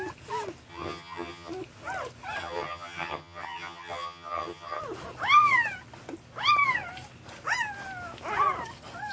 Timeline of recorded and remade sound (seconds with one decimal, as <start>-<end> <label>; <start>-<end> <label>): 0.0-0.7 recorded; 0.7-1.5 remade; 1.5-2.4 recorded; 2.4-4.8 remade; 4.8-9.1 recorded